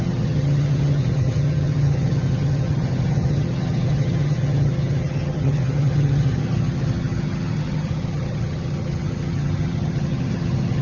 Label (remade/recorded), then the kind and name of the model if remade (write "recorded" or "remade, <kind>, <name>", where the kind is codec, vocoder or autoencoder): remade, vocoder, HiFi-GAN